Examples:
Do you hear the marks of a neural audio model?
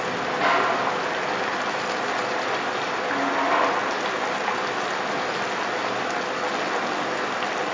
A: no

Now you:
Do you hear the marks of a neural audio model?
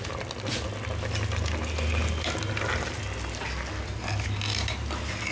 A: no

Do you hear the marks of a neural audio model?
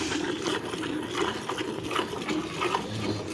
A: no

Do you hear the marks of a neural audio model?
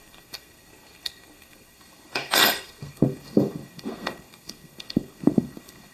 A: yes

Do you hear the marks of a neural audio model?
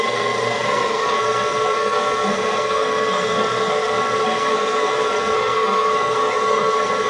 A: yes